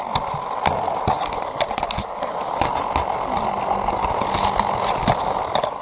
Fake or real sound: real